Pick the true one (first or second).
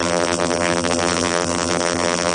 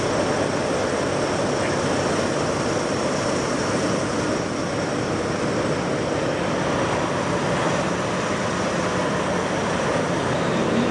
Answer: second